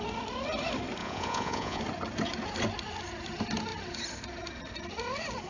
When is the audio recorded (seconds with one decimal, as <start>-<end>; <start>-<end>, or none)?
0.0-1.0; 1.8-5.5